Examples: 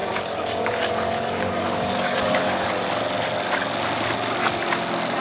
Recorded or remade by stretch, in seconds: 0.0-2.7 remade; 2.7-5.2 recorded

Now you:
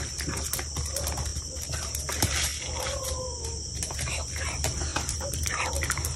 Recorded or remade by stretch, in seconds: 0.0-1.3 recorded; 1.3-2.0 remade; 2.0-4.9 recorded; 4.9-5.7 remade; 5.7-6.2 recorded

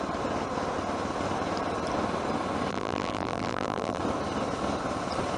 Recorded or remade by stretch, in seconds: 0.0-2.7 recorded; 2.7-4.0 remade; 4.0-5.4 recorded

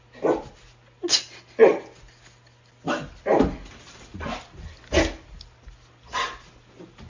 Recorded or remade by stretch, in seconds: 0.0-7.1 recorded

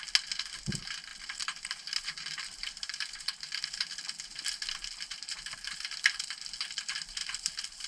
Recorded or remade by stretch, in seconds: 0.0-1.1 recorded; 1.1-3.7 remade; 3.7-7.2 recorded; 7.2-7.9 remade

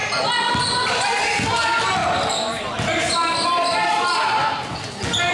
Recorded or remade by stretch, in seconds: 0.0-5.3 recorded